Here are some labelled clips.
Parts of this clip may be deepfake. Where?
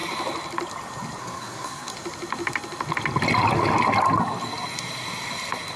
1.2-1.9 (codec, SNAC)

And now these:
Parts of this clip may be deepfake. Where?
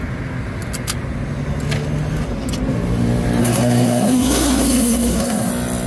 3.4-5.5 (codec, SNAC)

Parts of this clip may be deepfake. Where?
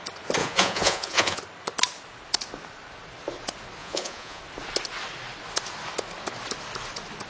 0.4-1.4 (vocoder, Vocos); 3.8-4.4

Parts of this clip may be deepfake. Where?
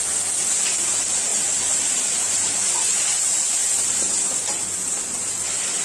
1.3-2.9 (vocoder, BigVGAN v2); 3.6-5.0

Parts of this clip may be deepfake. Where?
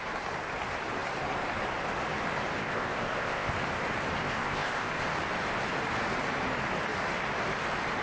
2.6-3.5 (codec, ZipCodec); 4.2-4.9